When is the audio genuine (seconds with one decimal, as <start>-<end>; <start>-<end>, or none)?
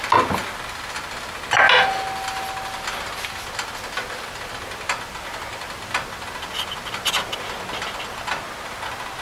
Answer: 0.0-9.2